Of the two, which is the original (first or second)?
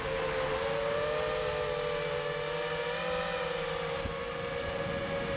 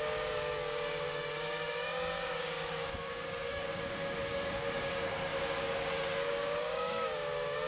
first